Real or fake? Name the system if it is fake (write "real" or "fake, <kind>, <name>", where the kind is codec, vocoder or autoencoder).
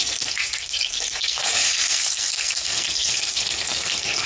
fake, codec, SNAC